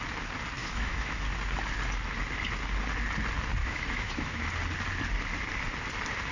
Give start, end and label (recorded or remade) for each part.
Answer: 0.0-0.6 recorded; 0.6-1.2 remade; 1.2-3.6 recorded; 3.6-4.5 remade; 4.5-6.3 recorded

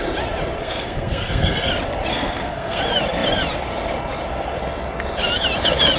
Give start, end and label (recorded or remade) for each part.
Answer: 0.0-0.6 recorded; 0.6-1.7 remade; 1.7-2.1 recorded; 2.1-2.8 remade; 2.8-6.0 recorded

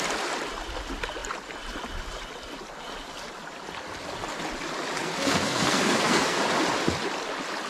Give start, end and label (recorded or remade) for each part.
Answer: 0.0-5.0 recorded; 5.0-6.4 remade; 6.4-7.7 recorded